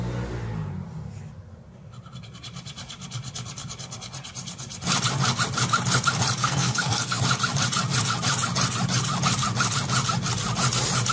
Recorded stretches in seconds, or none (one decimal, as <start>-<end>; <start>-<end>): 0.0-6.4; 7.2-11.1